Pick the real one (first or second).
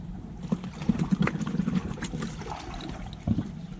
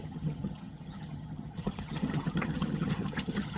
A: first